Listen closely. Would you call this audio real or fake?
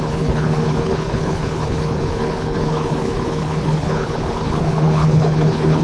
fake